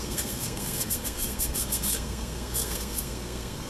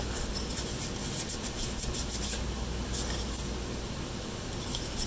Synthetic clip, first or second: first